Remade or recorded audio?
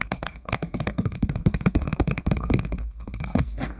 remade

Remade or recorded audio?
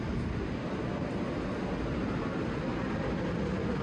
recorded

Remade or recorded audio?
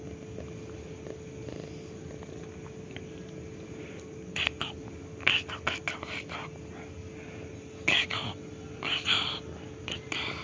recorded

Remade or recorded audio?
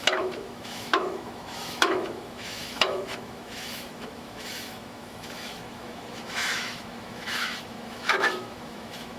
remade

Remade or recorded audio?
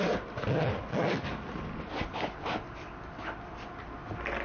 recorded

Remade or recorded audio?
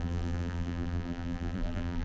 remade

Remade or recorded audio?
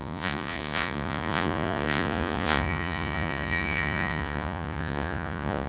remade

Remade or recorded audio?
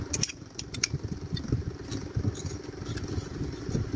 recorded